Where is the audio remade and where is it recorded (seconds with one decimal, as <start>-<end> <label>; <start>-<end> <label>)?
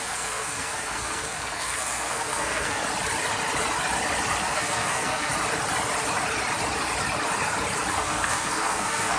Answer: 0.0-2.8 remade; 2.8-4.4 recorded; 4.4-5.3 remade; 5.3-7.9 recorded; 7.9-9.2 remade